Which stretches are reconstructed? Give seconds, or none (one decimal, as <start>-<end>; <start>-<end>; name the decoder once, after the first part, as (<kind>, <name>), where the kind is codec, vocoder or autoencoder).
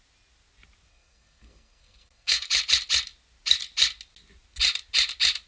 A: 0.9-2.5 (codec, SNAC)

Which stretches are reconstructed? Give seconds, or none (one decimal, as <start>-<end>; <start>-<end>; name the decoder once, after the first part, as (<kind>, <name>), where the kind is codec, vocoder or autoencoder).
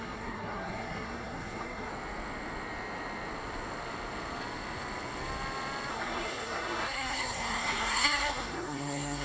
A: 0.0-1.9 (codec, SNAC); 5.9-9.2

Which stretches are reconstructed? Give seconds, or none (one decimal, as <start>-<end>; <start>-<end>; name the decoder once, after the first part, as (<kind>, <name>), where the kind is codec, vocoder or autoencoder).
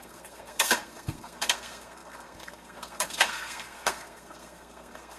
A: 0.0-5.2 (codec, SNAC)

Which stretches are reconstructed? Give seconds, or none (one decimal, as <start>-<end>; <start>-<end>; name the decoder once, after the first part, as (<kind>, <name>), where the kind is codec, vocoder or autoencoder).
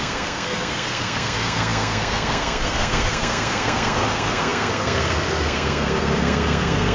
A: 0.0-6.9 (codec, SNAC)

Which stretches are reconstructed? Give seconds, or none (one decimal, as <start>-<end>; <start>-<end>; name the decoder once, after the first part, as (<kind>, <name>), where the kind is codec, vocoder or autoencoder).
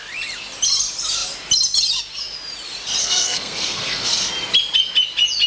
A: 3.0-4.3 (codec, SNAC)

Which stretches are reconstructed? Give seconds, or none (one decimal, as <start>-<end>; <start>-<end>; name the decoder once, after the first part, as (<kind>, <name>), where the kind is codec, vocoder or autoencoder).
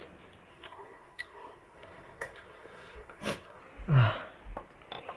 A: 0.5-3.6 (codec, SNAC)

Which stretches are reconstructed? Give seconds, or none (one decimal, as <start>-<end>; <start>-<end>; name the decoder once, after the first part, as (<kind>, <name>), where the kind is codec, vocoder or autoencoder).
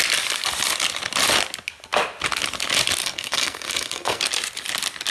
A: 3.0-4.2 (codec, SNAC)